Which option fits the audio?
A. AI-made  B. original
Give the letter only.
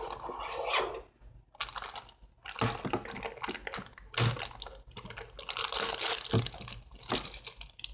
B